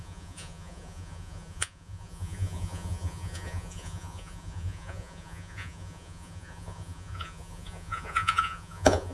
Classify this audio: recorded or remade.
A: remade